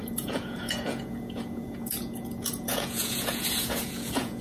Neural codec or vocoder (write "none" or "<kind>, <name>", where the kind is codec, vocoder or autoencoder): vocoder, Vocos